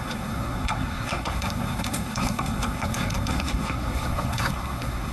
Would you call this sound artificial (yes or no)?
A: yes